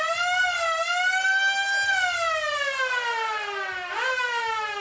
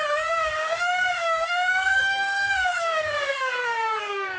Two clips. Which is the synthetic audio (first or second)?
second